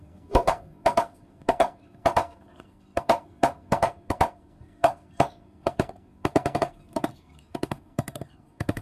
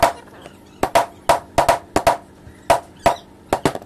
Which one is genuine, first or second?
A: second